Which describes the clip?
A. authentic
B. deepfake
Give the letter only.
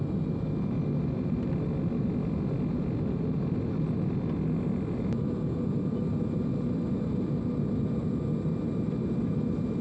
A